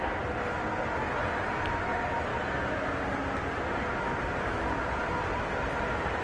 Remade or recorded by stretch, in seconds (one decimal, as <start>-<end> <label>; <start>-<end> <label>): 0.0-6.2 recorded